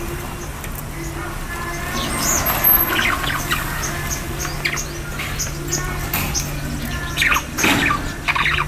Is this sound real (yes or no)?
yes